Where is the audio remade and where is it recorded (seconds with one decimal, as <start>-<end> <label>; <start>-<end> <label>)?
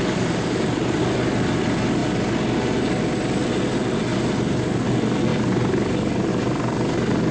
0.0-7.3 recorded